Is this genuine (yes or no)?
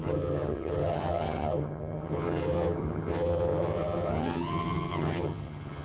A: no